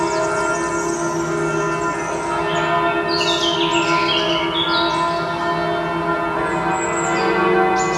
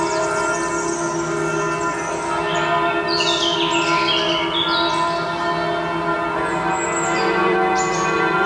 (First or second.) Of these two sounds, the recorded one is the first